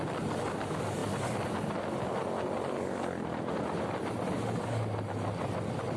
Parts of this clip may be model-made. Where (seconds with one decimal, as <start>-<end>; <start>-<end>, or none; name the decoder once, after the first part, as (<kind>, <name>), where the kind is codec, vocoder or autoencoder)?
none